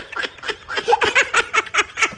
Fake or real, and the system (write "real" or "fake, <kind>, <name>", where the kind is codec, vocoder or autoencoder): real